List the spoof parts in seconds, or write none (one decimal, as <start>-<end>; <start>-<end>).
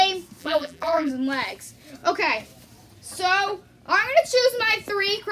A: 0.4-1.1